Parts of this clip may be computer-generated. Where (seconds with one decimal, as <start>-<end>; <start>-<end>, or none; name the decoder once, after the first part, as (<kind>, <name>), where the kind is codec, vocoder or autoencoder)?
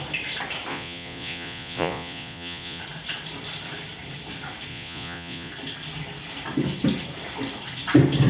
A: 0.7-2.8 (vocoder, Vocos); 4.7-5.5